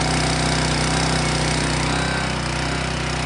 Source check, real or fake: real